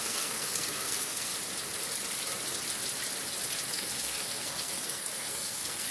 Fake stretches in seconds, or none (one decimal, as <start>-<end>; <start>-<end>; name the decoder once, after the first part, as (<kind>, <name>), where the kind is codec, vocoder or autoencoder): 0.0-1.3 (codec, SNAC); 3.7-5.9